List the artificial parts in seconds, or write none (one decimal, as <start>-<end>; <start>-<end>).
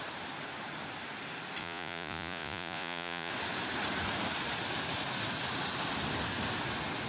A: 1.6-3.3